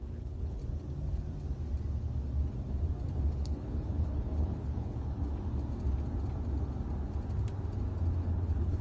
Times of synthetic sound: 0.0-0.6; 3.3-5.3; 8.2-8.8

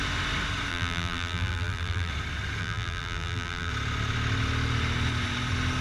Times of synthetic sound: 0.7-2.1; 2.6-3.7

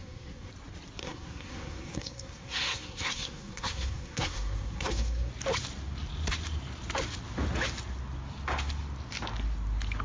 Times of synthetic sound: 0.0-0.5; 1.0-5.3

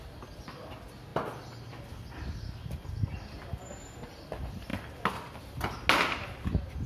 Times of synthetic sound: none

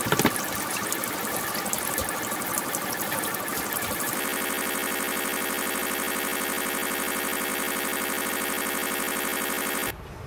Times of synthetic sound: 3.5-5.8; 7.5-8.3

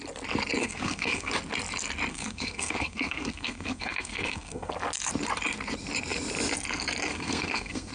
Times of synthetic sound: 0.6-1.3; 2.1-4.7; 7.1-7.9

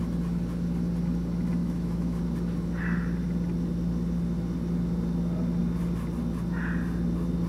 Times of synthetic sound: 1.6-2.2

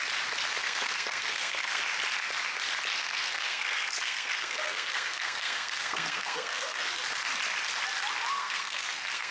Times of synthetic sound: 0.6-1.8; 3.0-6.9; 8.3-9.3